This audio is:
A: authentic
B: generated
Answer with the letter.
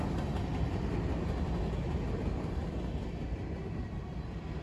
A